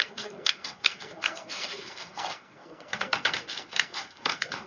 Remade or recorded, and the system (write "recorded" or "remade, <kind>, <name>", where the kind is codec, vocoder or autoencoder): remade, codec, SNAC